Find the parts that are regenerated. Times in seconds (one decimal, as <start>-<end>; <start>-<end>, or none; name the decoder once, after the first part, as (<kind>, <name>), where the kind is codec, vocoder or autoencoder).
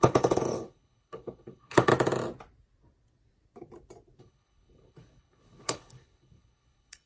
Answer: 0.0-1.9 (codec, HILCodec); 4.2-7.1